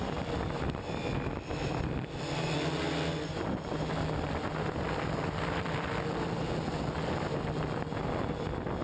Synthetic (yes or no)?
no